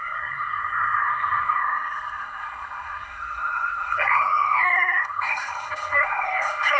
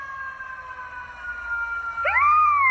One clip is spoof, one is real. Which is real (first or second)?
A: second